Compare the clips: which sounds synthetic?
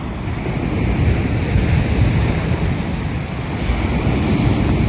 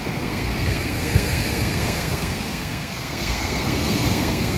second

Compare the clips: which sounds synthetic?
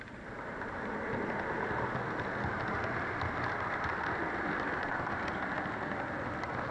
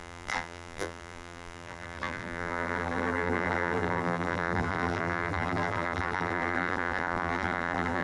second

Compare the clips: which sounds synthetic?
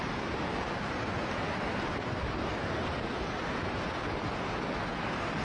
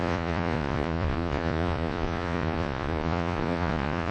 second